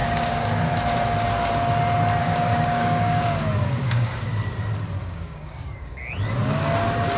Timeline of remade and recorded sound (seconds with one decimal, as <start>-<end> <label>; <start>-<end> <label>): 0.0-0.7 remade; 0.7-2.2 recorded; 2.2-4.3 remade; 4.3-5.0 recorded; 5.0-6.0 remade; 6.0-7.2 recorded